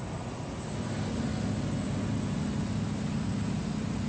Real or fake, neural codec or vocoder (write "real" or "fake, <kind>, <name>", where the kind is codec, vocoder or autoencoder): real